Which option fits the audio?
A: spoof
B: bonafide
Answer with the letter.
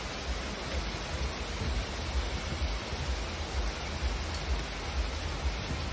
B